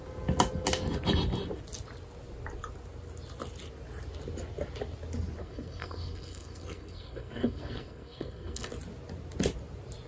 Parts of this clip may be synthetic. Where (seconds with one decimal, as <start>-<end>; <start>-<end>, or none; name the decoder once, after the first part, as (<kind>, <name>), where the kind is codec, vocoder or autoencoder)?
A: 5.4-8.7 (codec, SNAC)